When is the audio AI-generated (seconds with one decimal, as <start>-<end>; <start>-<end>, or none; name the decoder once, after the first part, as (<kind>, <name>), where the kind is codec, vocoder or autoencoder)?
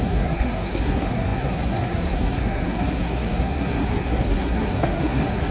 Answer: 0.0-5.5 (codec, SNAC)